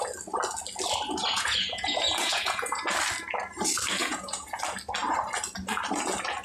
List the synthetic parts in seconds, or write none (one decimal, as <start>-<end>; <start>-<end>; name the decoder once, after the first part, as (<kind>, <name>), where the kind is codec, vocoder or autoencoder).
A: 1.2-2.8 (vocoder, Vocos); 4.0-4.6